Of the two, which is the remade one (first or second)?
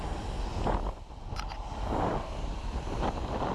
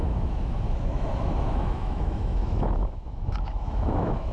second